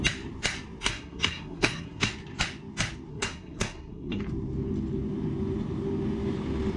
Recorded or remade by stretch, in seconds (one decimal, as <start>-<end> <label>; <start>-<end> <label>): 0.0-0.8 recorded; 0.8-2.1 remade; 2.1-3.1 recorded; 3.1-4.2 remade; 4.2-6.8 recorded